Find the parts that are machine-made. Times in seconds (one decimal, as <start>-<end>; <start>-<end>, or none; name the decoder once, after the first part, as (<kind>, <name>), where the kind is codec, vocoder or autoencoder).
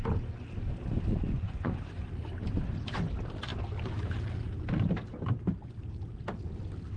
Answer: 1.1-2.1 (vocoder, Vocos)